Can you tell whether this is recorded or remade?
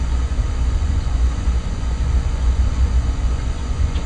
remade